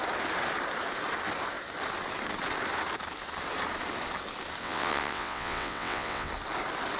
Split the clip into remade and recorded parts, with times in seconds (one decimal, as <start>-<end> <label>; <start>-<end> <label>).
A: 0.0-4.6 recorded; 4.6-6.3 remade; 6.3-7.0 recorded